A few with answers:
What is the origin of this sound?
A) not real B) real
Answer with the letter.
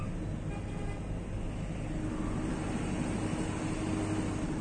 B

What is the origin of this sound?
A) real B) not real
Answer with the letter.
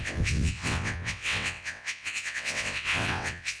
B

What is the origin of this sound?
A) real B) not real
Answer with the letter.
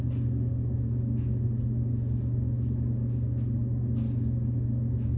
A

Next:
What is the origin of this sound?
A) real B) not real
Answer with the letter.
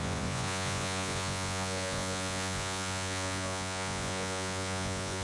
B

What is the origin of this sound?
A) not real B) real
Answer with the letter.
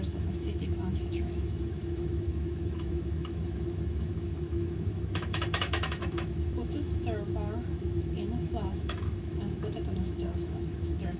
A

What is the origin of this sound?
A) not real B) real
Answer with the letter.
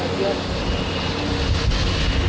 B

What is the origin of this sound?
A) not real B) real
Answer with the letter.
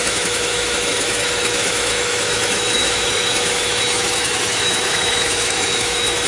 A